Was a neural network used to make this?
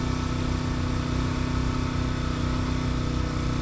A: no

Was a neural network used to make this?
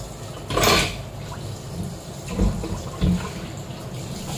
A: no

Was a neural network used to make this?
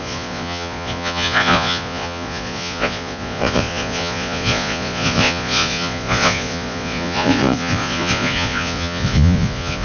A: yes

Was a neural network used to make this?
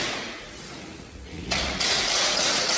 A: yes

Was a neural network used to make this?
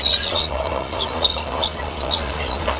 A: yes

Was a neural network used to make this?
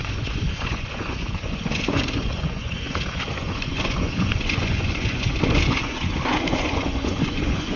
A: yes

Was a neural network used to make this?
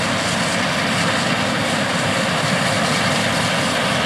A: no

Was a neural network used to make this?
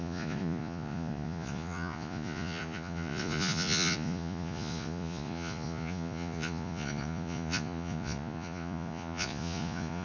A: yes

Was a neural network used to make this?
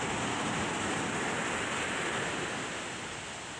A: no